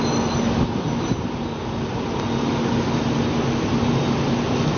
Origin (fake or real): real